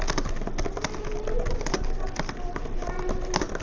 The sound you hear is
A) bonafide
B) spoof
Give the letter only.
A